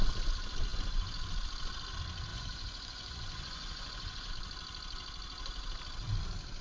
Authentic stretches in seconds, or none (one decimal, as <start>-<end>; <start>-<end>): 0.0-2.3; 4.3-6.6